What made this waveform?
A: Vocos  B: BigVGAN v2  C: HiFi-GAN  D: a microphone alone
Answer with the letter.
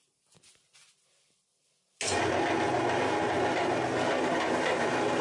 D